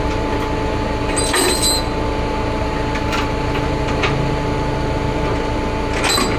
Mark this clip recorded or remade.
recorded